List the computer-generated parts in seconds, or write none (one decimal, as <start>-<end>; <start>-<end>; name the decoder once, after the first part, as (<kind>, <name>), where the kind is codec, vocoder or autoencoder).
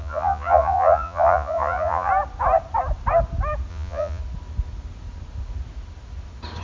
0.0-2.1 (vocoder, Vocos); 3.7-4.2